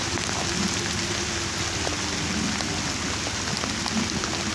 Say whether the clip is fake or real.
real